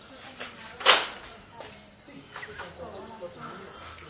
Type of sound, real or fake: real